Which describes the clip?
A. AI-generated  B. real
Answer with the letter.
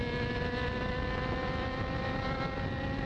B